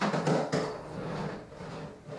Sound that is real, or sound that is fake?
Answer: real